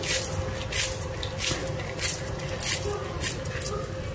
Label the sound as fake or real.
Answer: real